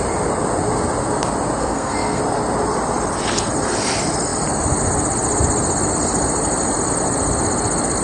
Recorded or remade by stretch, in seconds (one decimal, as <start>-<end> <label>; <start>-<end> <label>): 0.0-1.6 recorded; 1.6-2.2 remade; 2.2-8.0 recorded